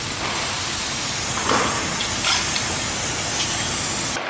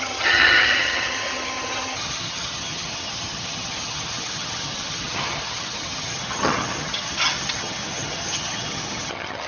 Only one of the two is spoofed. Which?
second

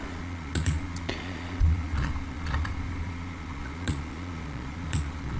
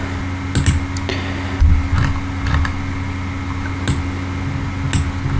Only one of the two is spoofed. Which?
first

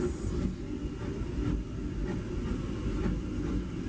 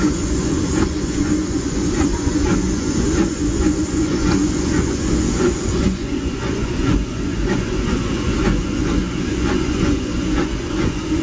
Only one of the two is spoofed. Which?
second